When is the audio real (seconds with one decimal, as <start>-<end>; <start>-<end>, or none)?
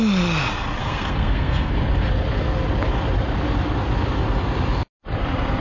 0.0-0.8; 1.7-5.6